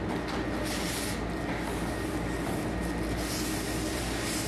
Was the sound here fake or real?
real